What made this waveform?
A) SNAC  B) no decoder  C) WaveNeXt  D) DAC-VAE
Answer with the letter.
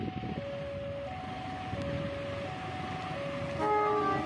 B